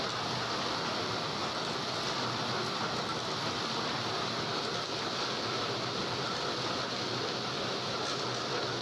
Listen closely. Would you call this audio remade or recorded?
recorded